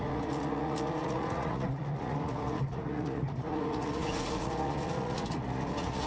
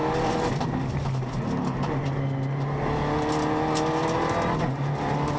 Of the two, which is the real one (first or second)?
second